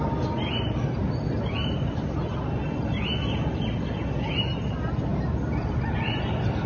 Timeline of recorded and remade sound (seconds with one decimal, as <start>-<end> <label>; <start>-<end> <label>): 0.0-6.7 recorded